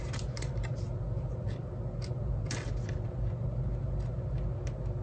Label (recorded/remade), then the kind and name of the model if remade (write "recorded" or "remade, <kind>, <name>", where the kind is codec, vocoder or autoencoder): recorded